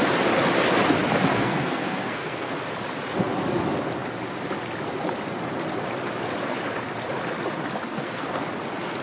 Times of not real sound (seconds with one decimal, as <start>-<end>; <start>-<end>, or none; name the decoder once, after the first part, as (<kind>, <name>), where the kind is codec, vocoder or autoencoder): 1.3-2.5 (codec, SNAC); 7.9-8.4